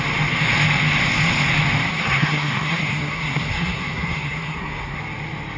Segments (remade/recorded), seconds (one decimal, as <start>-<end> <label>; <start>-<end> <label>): 0.0-1.9 recorded; 1.9-5.0 remade; 5.0-5.6 recorded